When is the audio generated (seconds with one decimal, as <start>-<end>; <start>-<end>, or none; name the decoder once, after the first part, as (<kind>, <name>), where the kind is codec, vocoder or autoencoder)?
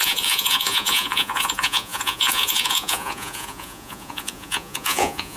0.0-5.4 (vocoder, Vocos)